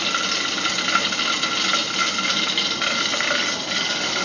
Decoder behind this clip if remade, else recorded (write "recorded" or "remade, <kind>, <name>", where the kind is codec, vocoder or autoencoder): recorded